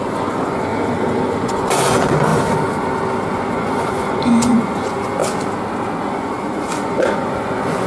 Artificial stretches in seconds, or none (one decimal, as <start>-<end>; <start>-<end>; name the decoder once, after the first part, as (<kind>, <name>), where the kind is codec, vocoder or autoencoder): 0.0-0.7 (vocoder, Vocos); 1.2-2.3; 3.3-5.2; 6.1-7.9

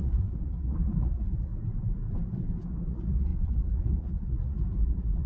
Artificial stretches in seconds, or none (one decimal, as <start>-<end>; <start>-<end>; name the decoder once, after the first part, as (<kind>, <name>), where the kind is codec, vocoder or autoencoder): 0.0-1.5 (vocoder, Vocos); 2.7-5.3

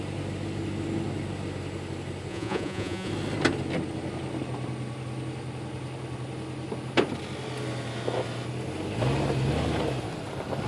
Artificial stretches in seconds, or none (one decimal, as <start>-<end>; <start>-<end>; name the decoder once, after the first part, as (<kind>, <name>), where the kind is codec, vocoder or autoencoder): 2.3-3.1 (vocoder, Vocos)

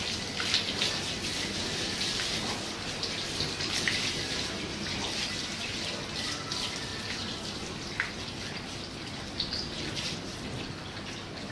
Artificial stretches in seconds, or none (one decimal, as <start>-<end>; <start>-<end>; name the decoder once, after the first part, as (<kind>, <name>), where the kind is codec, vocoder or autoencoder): none

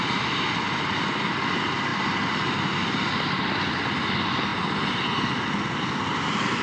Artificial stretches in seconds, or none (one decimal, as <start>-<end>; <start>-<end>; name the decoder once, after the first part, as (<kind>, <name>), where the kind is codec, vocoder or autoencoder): none